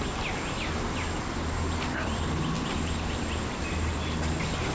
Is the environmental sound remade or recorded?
recorded